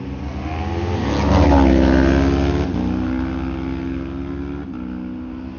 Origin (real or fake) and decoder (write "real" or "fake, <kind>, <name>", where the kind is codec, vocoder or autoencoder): real